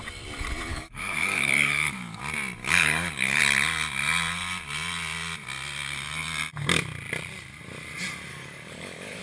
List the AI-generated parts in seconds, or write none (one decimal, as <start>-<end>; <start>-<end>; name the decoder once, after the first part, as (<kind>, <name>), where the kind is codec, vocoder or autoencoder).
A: 0.7-2.2 (codec, DAC); 2.6-3.4; 8.3-9.2